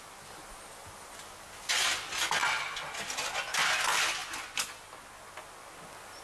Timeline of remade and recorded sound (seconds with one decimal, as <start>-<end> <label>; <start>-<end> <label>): 0.0-6.2 recorded